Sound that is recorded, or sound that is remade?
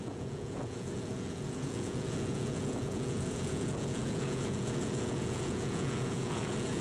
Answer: remade